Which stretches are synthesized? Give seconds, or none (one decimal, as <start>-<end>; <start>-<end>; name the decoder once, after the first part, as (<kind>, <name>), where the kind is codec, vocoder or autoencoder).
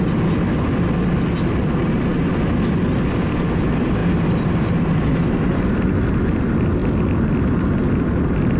none